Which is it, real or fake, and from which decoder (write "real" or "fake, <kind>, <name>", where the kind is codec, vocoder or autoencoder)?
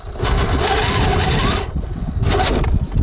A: real